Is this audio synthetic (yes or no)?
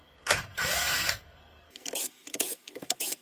yes